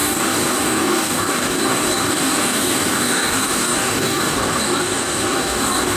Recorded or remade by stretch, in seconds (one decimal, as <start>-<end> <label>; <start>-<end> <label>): 0.0-6.0 remade